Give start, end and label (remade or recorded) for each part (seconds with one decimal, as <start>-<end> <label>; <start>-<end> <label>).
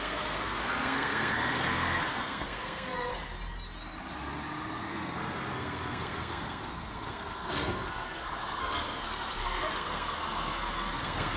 0.0-3.1 remade; 3.1-4.9 recorded; 4.9-11.4 remade